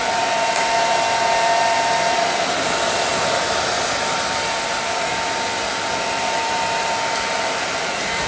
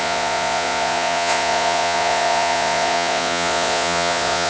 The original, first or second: first